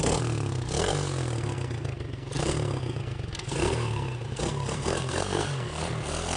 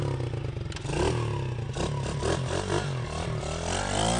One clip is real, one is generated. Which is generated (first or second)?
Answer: first